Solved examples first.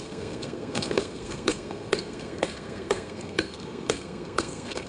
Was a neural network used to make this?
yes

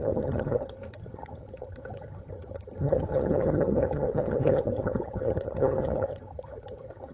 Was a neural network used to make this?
yes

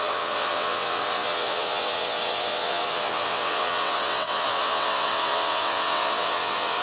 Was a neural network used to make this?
yes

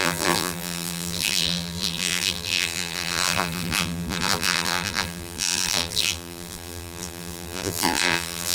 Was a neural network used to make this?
yes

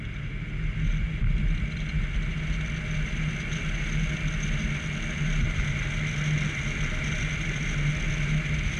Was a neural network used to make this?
no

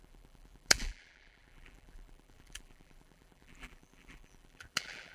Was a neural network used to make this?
yes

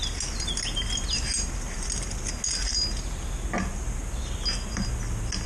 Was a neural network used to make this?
no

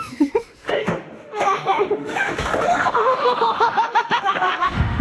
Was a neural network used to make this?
yes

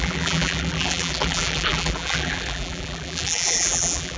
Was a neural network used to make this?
yes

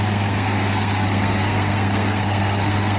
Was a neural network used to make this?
yes